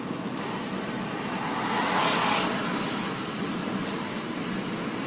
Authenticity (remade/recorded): recorded